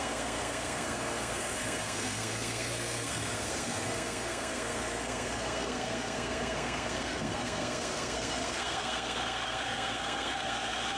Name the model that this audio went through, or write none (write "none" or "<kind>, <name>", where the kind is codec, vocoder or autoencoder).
codec, SNAC